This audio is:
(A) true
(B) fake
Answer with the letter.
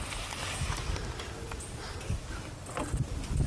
A